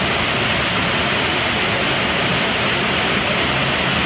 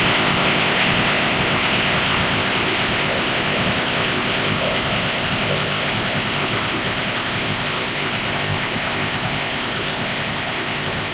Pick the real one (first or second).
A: first